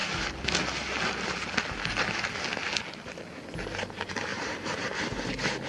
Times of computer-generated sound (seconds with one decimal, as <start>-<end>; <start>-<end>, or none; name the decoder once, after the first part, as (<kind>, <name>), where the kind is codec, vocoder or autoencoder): 4.3-5.0 (vocoder, BigVGAN v2)